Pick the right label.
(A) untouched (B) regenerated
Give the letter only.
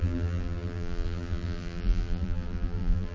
B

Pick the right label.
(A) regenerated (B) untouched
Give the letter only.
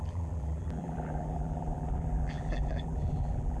A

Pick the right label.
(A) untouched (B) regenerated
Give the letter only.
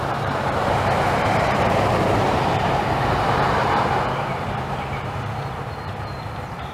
B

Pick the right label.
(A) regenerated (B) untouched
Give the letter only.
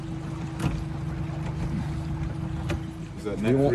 B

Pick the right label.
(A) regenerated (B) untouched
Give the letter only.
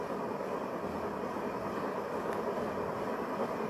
B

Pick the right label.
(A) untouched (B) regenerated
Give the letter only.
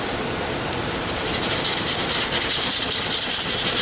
B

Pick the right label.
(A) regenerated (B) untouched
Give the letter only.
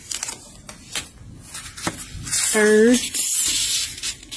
B